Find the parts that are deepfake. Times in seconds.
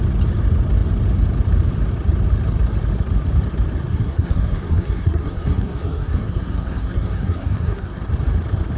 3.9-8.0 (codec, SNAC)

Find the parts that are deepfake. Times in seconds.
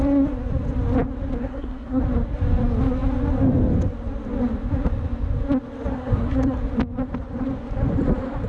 1.4-2.0 (codec, SNAC); 5.9-6.6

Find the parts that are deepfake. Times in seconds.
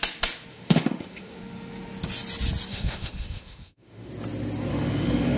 0.5-1.4 (autoencoder, DAC-VAE); 2.7-4.1; 4.7-5.4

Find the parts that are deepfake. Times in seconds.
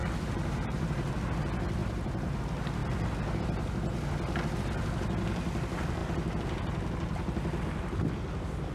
0.0-1.1 (vocoder, BigVGAN v2); 1.8-2.4